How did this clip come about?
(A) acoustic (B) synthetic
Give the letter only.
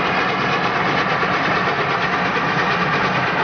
A